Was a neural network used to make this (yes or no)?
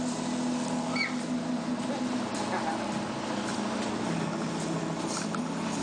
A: no